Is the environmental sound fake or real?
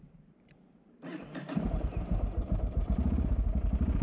fake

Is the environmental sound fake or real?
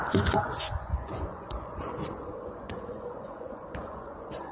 fake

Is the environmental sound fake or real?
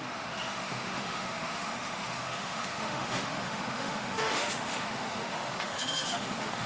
fake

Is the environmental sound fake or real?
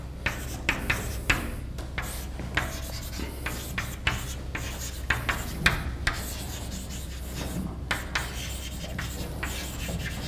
real